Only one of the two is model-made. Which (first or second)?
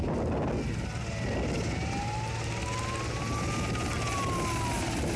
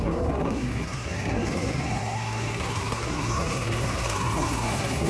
second